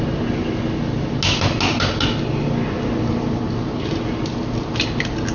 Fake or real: real